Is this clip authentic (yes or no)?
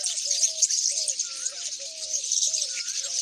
yes